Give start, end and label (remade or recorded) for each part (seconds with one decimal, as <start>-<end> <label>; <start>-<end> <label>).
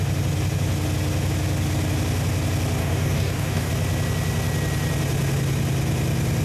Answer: 0.0-2.8 recorded; 2.8-3.7 remade; 3.7-6.4 recorded